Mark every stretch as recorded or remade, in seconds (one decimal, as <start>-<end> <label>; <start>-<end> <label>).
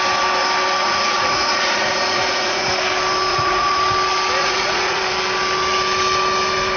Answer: 0.0-0.8 recorded; 0.8-2.7 remade; 2.7-3.3 recorded; 3.3-3.8 remade; 3.8-4.4 recorded; 4.4-5.0 remade; 5.0-6.8 recorded